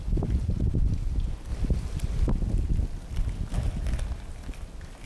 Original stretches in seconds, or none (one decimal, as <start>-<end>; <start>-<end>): 0.0-5.1